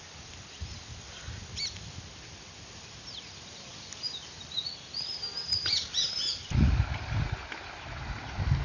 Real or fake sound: real